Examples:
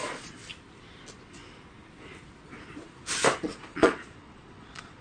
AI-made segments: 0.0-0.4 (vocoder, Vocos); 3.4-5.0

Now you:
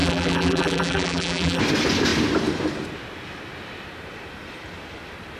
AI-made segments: 0.0-1.6 (vocoder, BigVGAN v2)